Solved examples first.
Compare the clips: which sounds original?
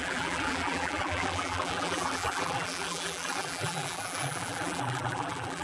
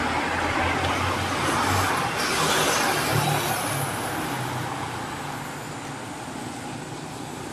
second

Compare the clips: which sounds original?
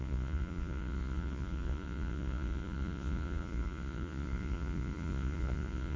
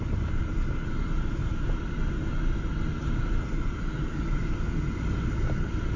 second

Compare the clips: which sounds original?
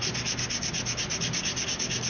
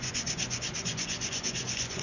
first